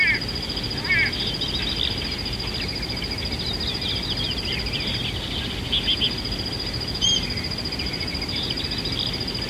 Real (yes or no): yes